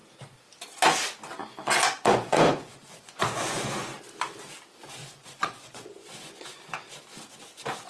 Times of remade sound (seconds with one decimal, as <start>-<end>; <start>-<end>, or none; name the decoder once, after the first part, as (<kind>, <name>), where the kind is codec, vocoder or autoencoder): 1.4-4.0 (vocoder, Vocos); 5.0-6.7